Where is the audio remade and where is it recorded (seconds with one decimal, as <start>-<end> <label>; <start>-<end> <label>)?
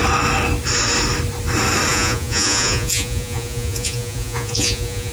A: 0.0-1.9 recorded; 1.9-5.1 remade